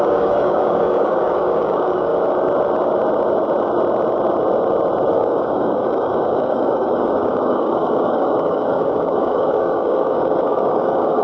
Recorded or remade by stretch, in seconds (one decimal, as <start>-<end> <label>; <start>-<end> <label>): 0.0-2.1 remade; 2.1-5.1 recorded; 5.1-11.2 remade